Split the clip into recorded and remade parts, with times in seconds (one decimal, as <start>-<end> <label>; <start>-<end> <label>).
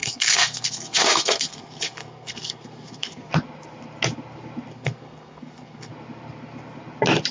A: 0.0-3.3 remade; 3.3-4.7 recorded; 4.7-5.9 remade; 5.9-7.3 recorded